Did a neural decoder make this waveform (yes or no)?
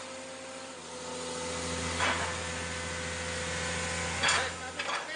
no